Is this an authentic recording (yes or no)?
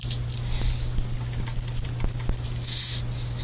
yes